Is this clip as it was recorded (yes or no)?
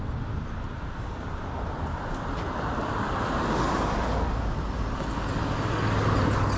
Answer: yes